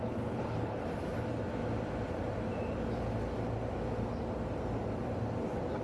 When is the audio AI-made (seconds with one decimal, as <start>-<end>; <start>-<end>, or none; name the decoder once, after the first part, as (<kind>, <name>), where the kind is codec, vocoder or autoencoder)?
0.0-0.9 (codec, HILCodec)